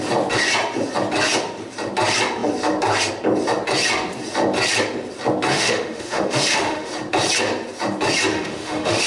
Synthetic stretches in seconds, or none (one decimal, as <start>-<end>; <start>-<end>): 5.5-6.9; 8.3-9.1